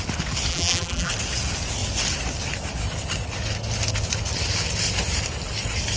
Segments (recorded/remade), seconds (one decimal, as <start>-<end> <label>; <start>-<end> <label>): 0.0-0.5 recorded; 0.5-1.1 remade; 1.1-6.0 recorded